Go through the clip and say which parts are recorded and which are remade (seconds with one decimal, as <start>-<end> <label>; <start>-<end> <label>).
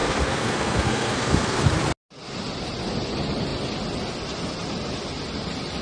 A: 0.0-1.7 remade; 1.7-5.8 recorded